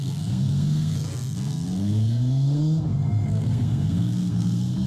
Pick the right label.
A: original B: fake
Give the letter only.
B